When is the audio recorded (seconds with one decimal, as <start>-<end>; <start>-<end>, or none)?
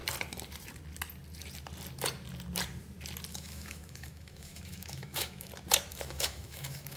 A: 0.0-3.3; 5.5-5.9